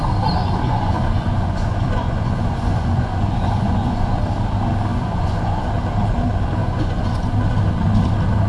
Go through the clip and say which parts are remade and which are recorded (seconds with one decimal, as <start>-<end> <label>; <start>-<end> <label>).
0.0-0.4 recorded; 0.4-4.2 remade; 4.2-4.9 recorded; 4.9-5.6 remade; 5.6-6.6 recorded; 6.6-7.3 remade; 7.3-8.5 recorded